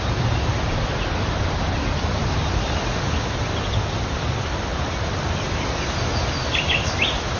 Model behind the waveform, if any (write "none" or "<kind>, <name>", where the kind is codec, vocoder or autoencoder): none